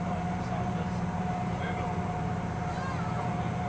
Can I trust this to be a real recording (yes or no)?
no